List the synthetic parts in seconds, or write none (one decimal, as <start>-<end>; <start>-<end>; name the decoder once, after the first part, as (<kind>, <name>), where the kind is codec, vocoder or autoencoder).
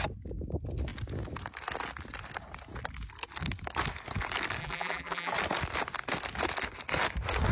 4.6-5.3 (vocoder, BigVGAN v2)